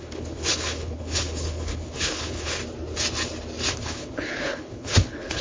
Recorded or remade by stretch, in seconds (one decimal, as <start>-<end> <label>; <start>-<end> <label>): 0.0-2.6 remade; 2.6-3.7 recorded; 3.7-5.4 remade